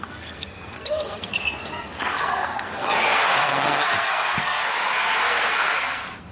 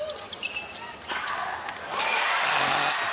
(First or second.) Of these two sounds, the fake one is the first